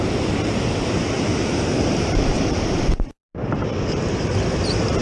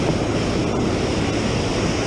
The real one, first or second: second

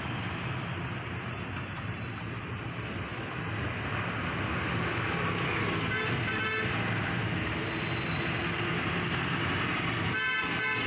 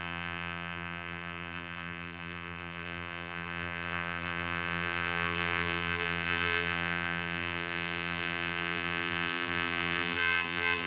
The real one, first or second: first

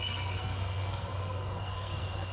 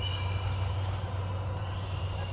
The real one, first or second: second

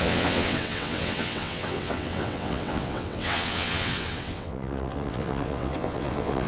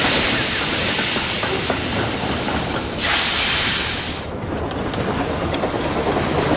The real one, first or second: second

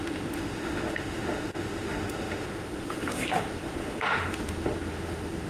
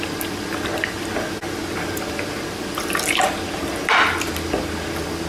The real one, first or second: second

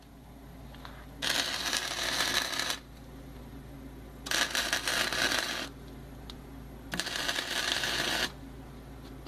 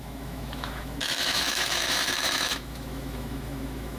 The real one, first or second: first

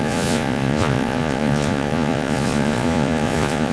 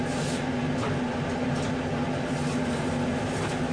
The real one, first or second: second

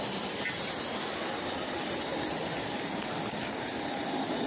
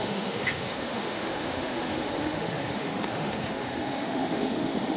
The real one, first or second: first